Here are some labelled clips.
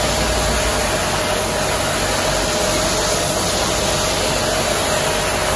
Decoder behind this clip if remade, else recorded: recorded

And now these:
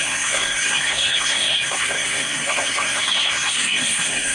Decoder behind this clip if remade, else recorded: remade, codec, SNAC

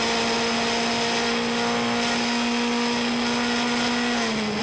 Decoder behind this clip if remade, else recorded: recorded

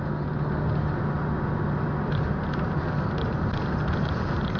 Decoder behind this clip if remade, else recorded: recorded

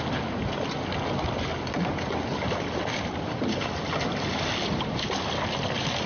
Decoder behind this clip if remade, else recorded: recorded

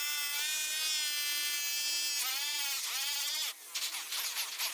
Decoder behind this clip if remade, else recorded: recorded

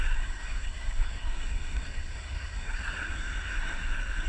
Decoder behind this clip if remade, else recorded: remade, codec, SNAC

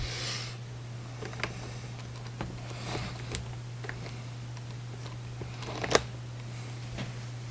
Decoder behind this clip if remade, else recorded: recorded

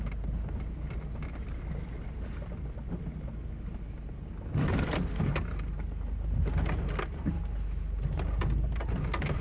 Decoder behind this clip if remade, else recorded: recorded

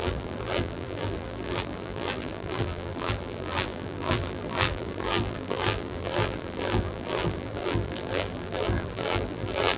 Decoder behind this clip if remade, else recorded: remade, vocoder, BigVGAN v2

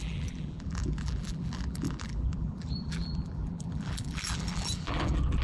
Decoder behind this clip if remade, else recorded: remade, vocoder, BigVGAN v2